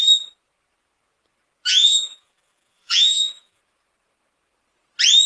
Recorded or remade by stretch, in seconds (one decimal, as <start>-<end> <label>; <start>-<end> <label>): 0.0-1.7 recorded; 1.7-3.6 remade; 3.6-5.3 recorded